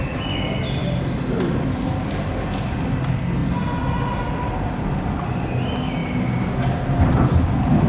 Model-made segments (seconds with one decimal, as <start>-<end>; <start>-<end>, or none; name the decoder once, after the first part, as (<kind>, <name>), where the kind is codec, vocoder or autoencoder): 3.4-5.1 (vocoder, BigVGAN v2)